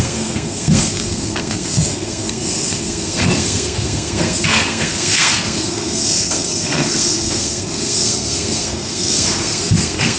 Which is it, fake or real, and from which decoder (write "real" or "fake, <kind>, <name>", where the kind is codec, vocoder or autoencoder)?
fake, codec, SNAC